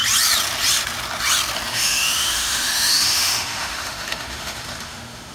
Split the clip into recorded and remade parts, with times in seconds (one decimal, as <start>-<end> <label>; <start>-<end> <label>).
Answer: 0.0-1.7 recorded; 1.7-5.3 remade